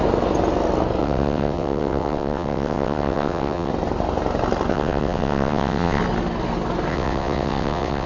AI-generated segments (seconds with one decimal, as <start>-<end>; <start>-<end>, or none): 1.0-3.7; 4.7-6.0; 6.9-8.1